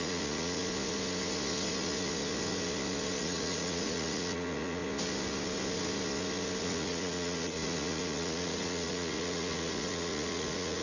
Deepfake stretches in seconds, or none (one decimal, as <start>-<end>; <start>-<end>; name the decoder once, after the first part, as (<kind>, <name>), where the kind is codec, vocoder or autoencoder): 0.0-0.6 (vocoder, Vocos); 3.2-4.8; 6.6-10.8